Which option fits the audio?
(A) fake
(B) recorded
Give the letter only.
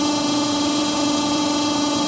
A